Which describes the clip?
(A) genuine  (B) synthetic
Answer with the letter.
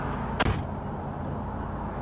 A